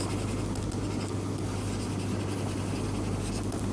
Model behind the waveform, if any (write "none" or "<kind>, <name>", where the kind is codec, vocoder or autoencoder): none